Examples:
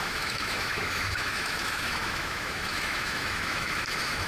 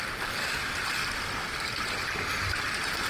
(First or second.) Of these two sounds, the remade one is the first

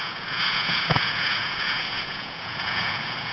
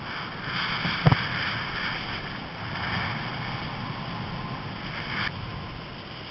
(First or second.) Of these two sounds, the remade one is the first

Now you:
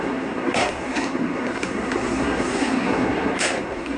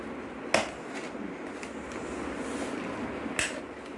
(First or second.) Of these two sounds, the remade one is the first